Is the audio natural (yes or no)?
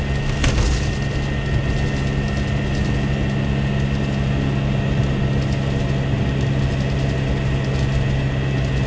yes